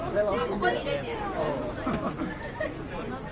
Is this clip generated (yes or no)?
no